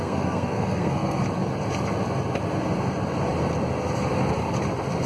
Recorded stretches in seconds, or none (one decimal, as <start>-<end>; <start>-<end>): 1.2-5.1